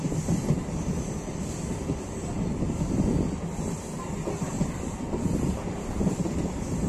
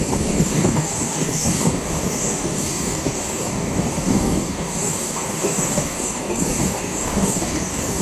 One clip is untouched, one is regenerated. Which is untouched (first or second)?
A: first